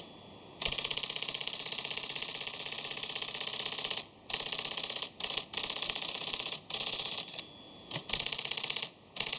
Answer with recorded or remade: recorded